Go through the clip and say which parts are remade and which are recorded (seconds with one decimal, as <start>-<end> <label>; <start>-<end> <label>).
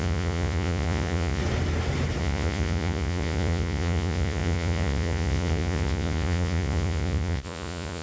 0.0-1.4 remade; 1.4-2.2 recorded; 2.2-8.0 remade